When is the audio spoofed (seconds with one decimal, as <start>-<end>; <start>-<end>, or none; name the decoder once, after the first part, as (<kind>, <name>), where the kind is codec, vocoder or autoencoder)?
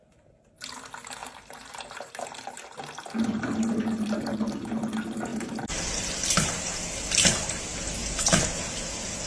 1.2-2.8 (vocoder, BigVGAN v2); 5.3-6.5; 8.0-8.8